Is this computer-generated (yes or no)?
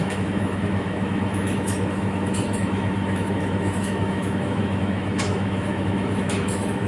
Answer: yes